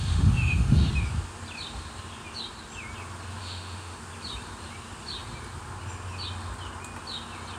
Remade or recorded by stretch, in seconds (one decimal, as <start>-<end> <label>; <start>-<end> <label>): 0.0-0.9 remade; 0.9-3.4 recorded; 3.4-4.0 remade; 4.0-7.6 recorded